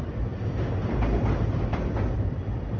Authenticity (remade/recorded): recorded